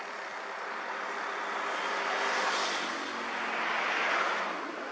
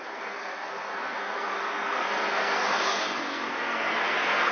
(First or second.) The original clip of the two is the first